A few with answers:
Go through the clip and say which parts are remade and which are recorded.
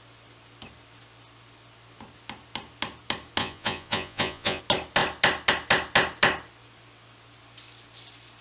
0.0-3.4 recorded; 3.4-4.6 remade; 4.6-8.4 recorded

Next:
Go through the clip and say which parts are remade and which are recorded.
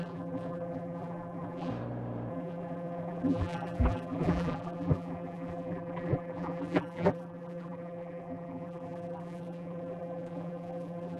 0.0-1.7 remade; 1.7-2.3 recorded; 2.3-11.2 remade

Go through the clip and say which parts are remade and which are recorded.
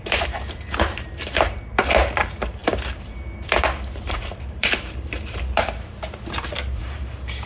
0.0-7.5 remade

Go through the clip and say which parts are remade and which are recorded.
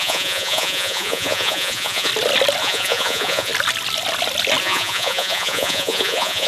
0.0-2.1 remade; 2.1-2.6 recorded; 2.6-3.5 remade; 3.5-4.6 recorded; 4.6-6.5 remade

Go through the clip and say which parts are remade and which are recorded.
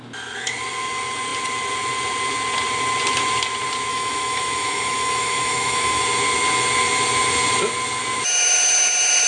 0.0-3.9 recorded; 3.9-6.0 remade; 6.0-9.3 recorded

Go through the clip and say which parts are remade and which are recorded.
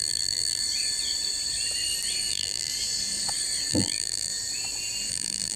0.0-0.6 remade; 0.6-2.3 recorded; 2.3-2.7 remade; 2.7-3.7 recorded; 3.7-4.3 remade; 4.3-5.1 recorded; 5.1-5.6 remade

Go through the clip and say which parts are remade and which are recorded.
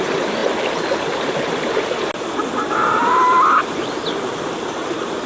0.0-5.3 recorded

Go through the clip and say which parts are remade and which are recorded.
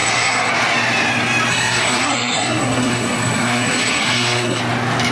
0.0-0.5 remade; 0.5-1.5 recorded; 1.5-4.6 remade; 4.6-5.1 recorded